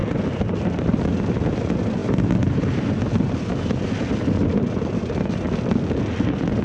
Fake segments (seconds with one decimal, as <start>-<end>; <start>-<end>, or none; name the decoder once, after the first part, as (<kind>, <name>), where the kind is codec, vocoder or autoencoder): none